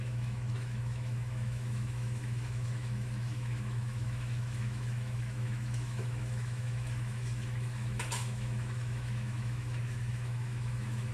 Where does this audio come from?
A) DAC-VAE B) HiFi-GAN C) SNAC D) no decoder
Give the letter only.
A